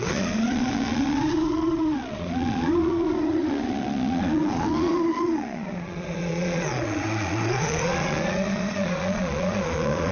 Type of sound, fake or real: fake